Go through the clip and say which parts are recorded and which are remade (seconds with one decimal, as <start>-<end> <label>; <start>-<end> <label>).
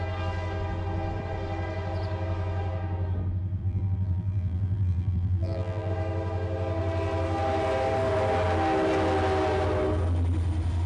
0.0-3.6 recorded; 3.6-5.9 remade; 5.9-10.9 recorded